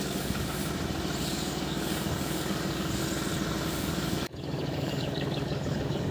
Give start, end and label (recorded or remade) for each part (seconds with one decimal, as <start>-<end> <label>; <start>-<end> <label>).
0.0-0.6 remade; 0.6-1.2 recorded; 1.2-3.0 remade; 3.0-3.7 recorded; 3.7-6.1 remade